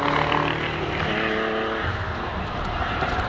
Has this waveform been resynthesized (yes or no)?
no